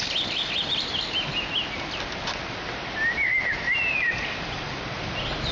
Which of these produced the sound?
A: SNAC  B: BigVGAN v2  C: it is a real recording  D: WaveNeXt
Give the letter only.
C